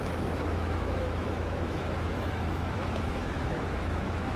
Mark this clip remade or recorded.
remade